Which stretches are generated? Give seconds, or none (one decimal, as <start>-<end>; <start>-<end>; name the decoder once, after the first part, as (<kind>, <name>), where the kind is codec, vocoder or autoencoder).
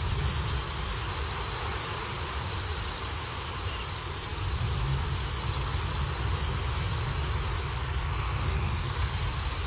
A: 7.8-9.2 (codec, SNAC)